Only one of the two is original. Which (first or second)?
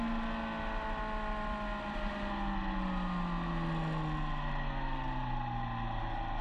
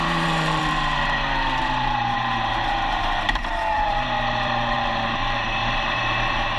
first